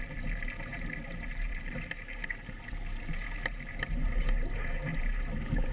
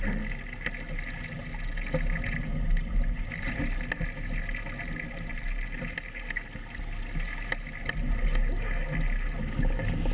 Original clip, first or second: second